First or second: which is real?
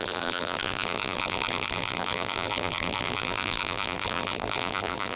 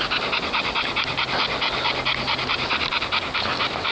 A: second